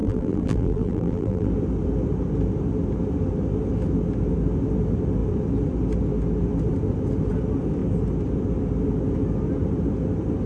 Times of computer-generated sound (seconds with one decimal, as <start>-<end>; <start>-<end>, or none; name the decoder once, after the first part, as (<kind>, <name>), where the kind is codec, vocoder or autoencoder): 0.0-1.5 (vocoder, BigVGAN v2)